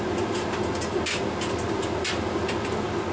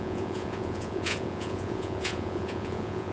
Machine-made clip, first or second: second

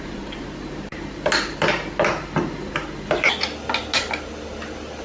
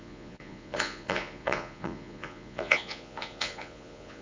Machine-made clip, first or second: second